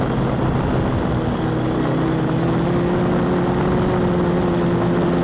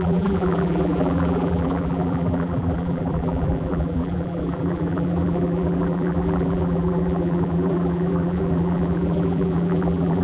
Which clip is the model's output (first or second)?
second